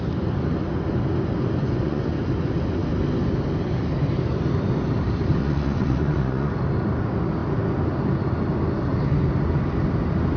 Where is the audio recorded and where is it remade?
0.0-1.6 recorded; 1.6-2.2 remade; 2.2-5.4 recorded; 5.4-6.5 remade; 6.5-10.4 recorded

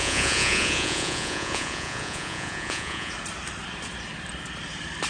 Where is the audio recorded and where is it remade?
0.0-3.1 remade; 3.1-5.1 recorded